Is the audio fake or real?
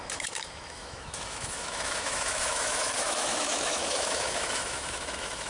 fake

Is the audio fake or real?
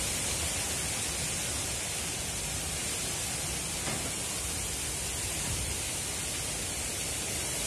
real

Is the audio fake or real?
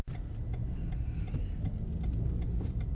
real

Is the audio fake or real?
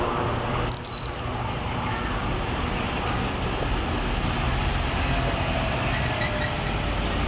real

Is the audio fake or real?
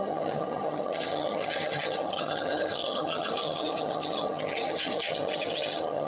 fake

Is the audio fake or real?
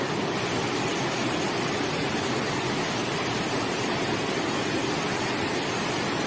real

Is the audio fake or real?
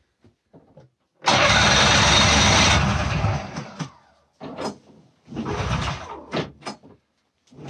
real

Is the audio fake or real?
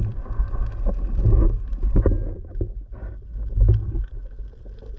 real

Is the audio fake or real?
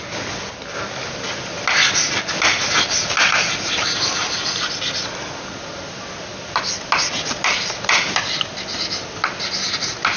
real